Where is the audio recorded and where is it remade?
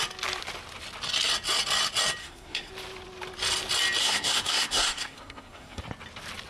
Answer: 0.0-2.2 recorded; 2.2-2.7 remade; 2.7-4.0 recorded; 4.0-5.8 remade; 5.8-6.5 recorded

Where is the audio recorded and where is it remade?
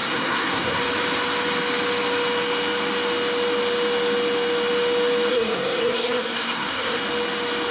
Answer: 0.0-0.8 remade; 0.8-5.3 recorded; 5.3-7.0 remade; 7.0-7.7 recorded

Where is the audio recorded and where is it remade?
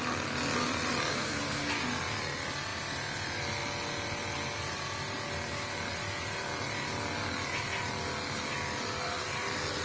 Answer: 0.0-1.1 recorded; 1.1-1.7 remade; 1.7-9.8 recorded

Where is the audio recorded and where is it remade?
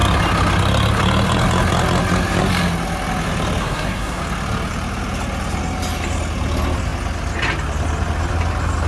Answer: 0.0-3.6 recorded; 3.6-4.2 remade; 4.2-8.9 recorded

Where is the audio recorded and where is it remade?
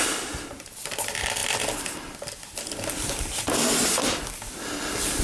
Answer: 0.0-5.2 recorded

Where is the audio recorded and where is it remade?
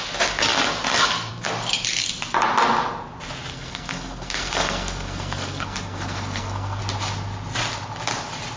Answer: 0.0-3.5 recorded; 3.5-6.8 remade; 6.8-8.6 recorded